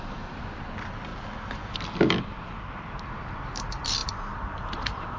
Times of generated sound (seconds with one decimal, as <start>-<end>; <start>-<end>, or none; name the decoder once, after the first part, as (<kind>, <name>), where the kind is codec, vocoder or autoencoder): 0.0-1.1 (vocoder, BigVGAN v2); 3.4-5.2